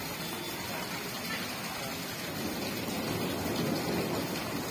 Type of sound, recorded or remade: recorded